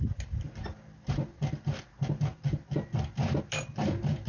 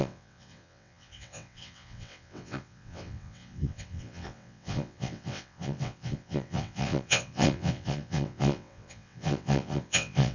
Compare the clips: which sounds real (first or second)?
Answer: first